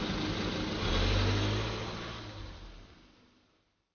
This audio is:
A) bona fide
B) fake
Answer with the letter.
A